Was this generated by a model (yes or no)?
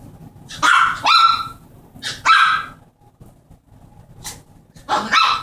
no